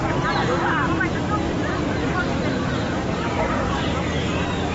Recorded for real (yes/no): yes